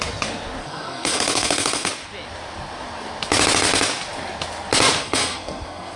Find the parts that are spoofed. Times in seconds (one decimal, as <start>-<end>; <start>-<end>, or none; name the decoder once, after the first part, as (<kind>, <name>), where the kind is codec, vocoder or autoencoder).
0.6-1.9 (codec, SNAC); 5.0-6.0